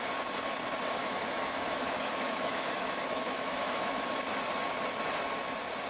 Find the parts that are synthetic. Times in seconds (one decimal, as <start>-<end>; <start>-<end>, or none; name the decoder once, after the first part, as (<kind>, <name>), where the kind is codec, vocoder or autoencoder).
1.0-4.2 (autoencoder, DAC-VAE)